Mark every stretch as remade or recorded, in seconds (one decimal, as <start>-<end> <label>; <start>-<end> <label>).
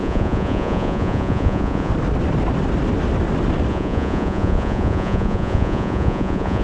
0.0-1.9 remade; 1.9-3.7 recorded; 3.7-6.6 remade